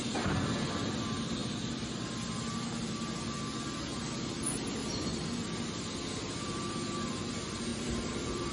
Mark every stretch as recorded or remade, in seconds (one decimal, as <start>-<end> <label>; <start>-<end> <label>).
0.0-1.4 recorded; 1.4-3.1 remade; 3.1-4.8 recorded; 4.8-7.3 remade; 7.3-7.7 recorded; 7.7-8.5 remade